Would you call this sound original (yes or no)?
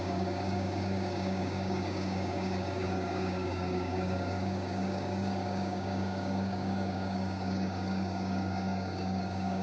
no